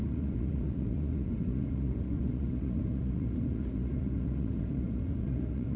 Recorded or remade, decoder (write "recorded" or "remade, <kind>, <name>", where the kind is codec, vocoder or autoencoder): remade, vocoder, Vocos